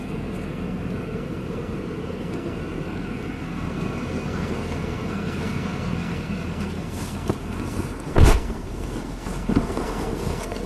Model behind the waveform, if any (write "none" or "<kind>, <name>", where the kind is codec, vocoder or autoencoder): codec, SNAC